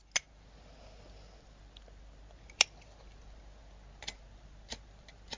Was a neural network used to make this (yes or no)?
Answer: no